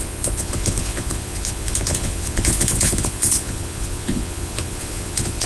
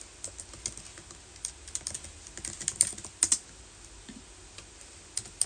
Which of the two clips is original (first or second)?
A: second